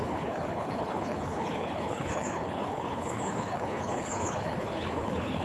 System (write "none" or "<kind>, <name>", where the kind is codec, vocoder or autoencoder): codec, HILCodec